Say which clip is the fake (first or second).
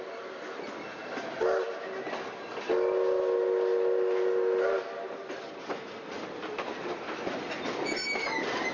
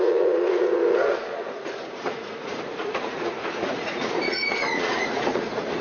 second